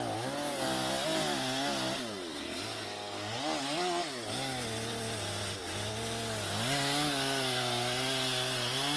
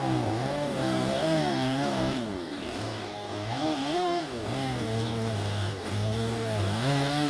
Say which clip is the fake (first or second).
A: second